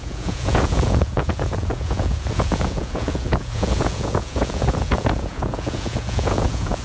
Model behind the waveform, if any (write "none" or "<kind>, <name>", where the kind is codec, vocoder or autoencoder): vocoder, Vocos